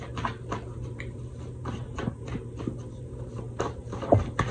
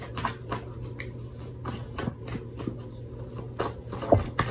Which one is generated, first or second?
first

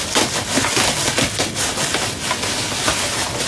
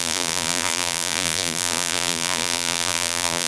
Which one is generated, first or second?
second